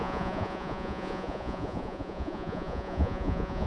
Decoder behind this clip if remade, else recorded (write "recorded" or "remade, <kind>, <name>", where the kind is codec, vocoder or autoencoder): remade, vocoder, Vocos